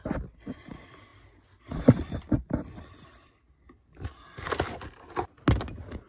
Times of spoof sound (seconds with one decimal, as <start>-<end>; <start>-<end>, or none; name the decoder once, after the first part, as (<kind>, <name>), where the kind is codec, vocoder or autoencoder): none